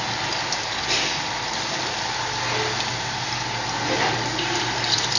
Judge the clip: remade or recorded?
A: recorded